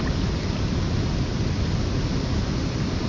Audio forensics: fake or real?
real